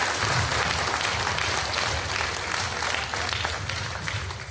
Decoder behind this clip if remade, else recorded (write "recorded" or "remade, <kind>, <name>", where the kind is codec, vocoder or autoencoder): recorded